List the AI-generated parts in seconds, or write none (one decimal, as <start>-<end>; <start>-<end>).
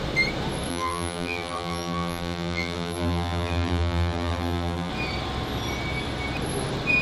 0.7-4.9